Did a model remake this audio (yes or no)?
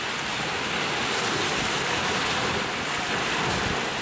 no